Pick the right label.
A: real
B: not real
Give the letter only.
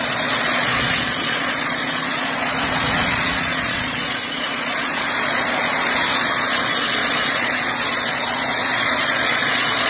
B